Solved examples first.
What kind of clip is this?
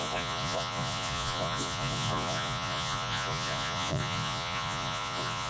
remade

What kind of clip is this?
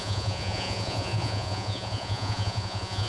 remade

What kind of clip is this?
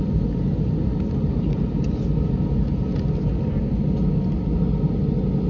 recorded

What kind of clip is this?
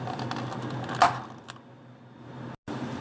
recorded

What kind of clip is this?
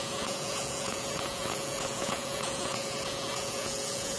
remade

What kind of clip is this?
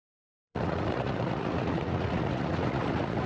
remade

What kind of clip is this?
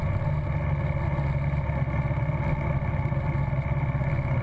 recorded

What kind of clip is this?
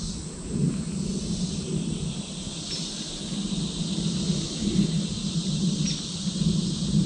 recorded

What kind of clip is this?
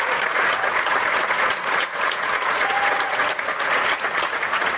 remade